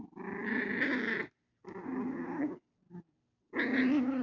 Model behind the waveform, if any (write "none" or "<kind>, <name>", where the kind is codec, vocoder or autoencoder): none